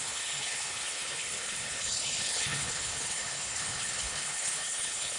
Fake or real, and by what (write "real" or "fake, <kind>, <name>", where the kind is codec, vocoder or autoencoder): fake, codec, HILCodec